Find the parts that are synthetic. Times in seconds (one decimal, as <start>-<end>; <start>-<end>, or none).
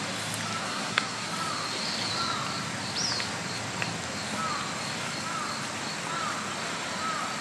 0.6-1.3